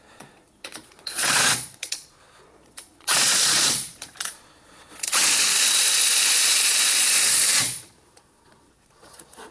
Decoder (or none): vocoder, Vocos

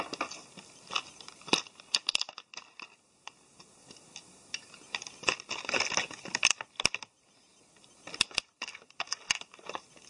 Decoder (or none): none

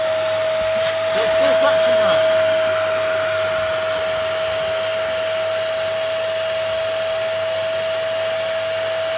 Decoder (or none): none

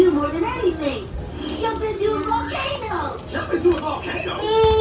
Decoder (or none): none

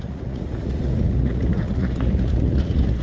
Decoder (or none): vocoder, Vocos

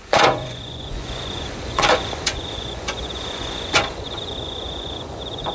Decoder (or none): vocoder, Vocos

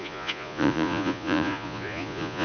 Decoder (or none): vocoder, Vocos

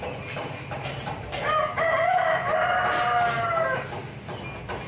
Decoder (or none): none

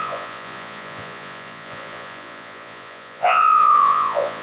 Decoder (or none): vocoder, Vocos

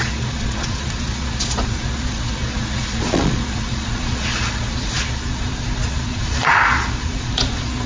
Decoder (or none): vocoder, Vocos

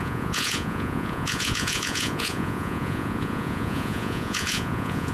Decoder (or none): vocoder, Vocos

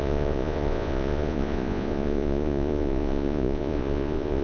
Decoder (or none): vocoder, Vocos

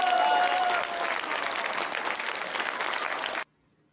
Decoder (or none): none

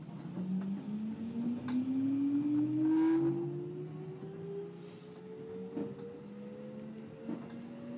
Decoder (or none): none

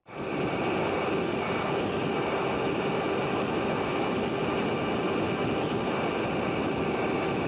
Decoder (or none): none